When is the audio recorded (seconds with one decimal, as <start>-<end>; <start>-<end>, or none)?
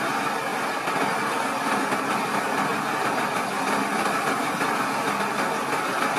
0.0-6.2